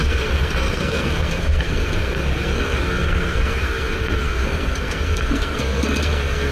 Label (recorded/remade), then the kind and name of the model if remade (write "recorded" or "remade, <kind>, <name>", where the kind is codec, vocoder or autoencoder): remade, codec, SNAC